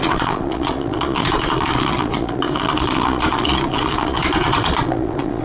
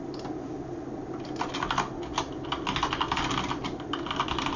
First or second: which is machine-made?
first